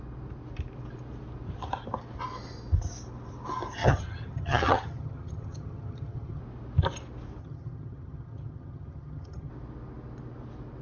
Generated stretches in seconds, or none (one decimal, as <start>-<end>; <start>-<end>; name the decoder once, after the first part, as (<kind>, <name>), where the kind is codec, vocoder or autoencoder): 3.8-6.4 (vocoder, HiFi-GAN); 7.4-9.5